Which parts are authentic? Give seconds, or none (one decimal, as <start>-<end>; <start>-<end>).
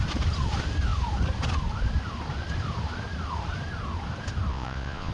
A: 0.0-4.5